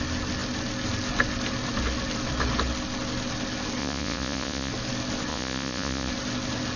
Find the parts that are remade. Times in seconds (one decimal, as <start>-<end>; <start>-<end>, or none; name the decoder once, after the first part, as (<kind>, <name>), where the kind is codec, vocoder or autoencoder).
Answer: 3.8-4.7 (vocoder, Vocos); 5.3-6.1